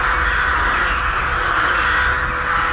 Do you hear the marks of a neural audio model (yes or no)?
no